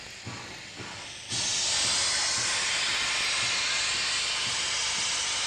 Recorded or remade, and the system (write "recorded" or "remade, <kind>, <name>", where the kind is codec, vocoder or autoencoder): recorded